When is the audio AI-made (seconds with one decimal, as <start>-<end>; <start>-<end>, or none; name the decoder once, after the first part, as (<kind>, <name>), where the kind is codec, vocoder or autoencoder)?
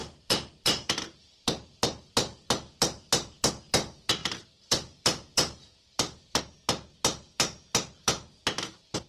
0.0-3.5 (vocoder, BigVGAN v2); 4.2-6.4